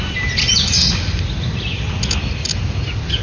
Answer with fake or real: real